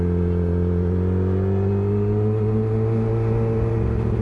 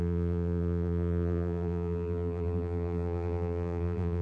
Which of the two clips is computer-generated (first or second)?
second